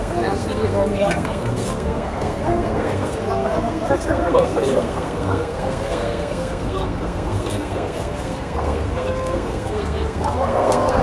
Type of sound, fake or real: fake